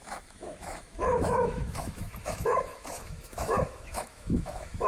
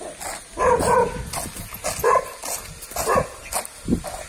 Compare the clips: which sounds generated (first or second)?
first